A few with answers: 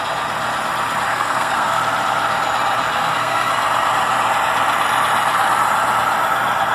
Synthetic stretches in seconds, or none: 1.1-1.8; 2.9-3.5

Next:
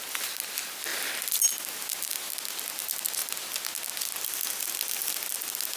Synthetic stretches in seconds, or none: 0.9-2.2

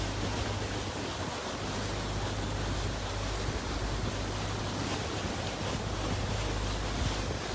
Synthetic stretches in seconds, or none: none

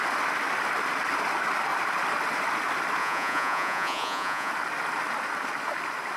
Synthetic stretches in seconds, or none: 3.0-4.5

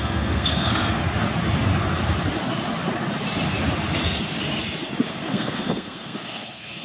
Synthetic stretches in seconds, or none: 0.0-1.0; 5.1-6.8

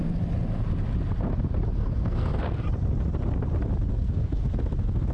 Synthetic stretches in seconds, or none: 1.8-2.6; 3.9-4.5

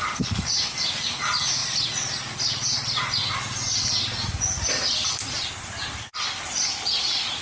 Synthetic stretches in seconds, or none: 0.0-1.6; 3.2-7.4

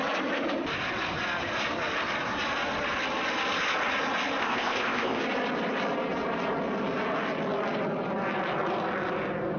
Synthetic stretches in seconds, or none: 4.4-5.2